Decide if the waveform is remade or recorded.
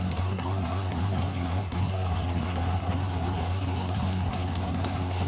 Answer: remade